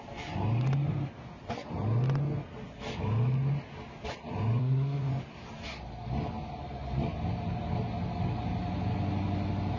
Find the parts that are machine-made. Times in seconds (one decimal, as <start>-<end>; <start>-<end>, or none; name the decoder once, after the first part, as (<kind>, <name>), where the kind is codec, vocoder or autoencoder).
4.6-5.1 (codec, SNAC)